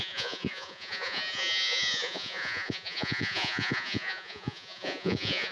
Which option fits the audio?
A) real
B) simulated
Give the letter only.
B